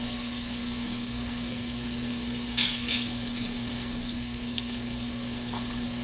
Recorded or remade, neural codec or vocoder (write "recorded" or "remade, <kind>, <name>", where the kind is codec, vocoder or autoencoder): remade, codec, SNAC